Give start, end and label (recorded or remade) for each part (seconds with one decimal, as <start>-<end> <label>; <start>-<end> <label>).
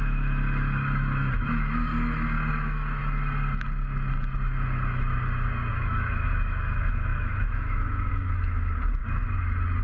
0.0-1.9 remade; 1.9-2.5 recorded; 2.5-3.0 remade; 3.0-5.7 recorded; 5.7-9.0 remade; 9.0-9.8 recorded